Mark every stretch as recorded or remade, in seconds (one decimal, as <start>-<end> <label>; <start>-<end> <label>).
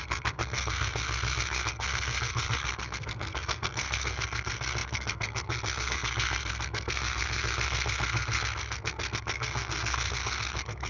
0.0-10.9 remade